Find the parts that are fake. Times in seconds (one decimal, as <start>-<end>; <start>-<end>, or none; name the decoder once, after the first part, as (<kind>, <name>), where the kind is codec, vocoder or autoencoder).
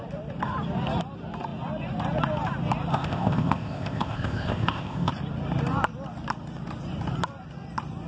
2.9-5.1 (codec, ZipCodec)